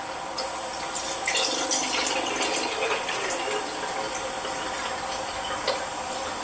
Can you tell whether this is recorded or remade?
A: recorded